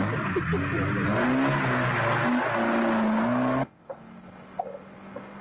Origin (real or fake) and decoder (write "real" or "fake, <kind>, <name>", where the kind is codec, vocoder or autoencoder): real